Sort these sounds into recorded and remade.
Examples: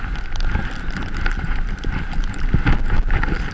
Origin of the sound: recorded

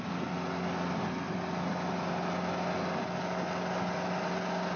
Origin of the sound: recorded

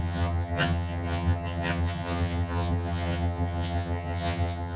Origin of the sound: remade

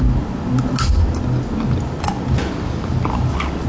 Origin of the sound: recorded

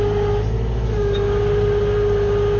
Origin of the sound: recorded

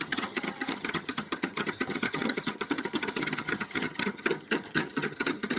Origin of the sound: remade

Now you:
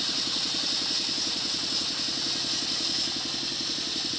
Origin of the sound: recorded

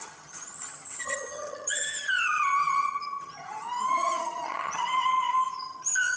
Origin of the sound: remade